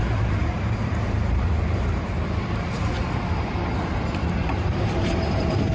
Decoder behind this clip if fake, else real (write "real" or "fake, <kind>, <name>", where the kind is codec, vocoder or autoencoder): fake, vocoder, BigVGAN v2